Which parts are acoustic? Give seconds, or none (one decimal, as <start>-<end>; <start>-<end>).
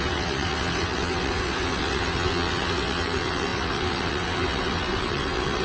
none